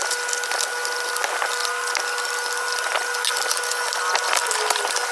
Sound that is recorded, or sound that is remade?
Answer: recorded